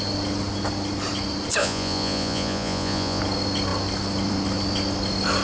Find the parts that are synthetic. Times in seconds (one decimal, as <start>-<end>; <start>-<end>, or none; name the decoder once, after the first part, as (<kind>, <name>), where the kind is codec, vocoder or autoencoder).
1.6-3.2 (vocoder, Vocos)